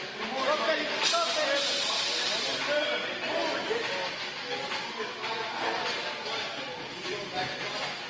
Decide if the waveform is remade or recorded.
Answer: recorded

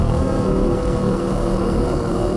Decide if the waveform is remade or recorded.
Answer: remade